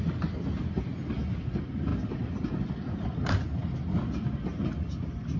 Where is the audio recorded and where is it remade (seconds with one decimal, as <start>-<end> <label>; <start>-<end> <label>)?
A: 0.0-5.4 recorded